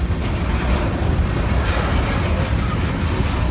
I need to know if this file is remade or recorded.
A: recorded